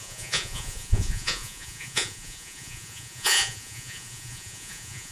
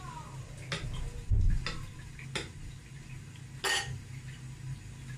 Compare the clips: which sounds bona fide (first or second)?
second